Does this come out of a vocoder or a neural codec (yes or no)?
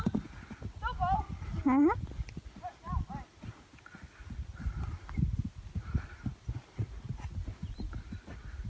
no